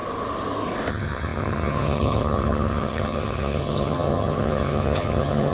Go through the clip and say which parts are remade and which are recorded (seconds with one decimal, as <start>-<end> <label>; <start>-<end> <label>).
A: 0.0-0.9 recorded; 0.9-5.5 remade